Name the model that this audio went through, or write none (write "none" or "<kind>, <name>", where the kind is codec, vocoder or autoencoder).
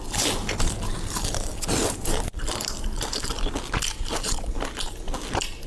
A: none